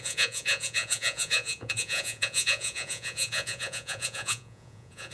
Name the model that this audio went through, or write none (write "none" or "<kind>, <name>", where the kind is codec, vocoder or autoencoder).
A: vocoder, Vocos